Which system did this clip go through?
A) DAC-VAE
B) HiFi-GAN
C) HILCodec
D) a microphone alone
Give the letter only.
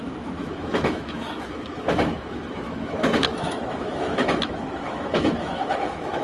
A